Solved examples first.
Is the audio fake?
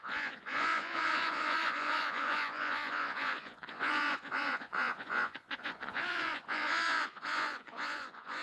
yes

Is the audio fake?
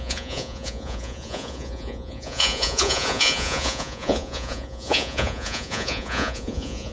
yes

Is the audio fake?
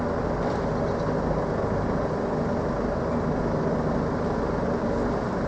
no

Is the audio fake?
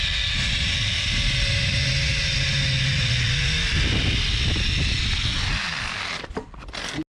no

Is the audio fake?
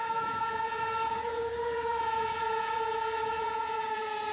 yes